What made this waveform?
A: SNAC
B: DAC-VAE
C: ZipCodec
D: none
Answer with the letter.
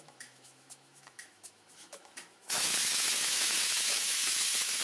B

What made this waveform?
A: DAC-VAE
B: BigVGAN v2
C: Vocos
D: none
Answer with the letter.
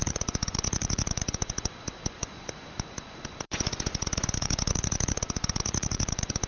C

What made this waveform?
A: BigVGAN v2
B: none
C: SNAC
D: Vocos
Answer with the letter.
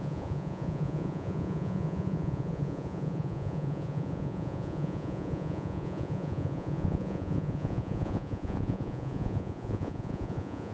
D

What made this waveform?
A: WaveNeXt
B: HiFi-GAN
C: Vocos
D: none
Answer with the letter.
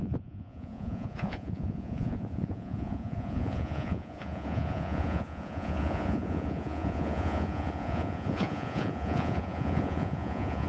C